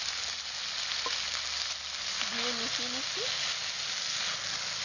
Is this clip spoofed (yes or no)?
no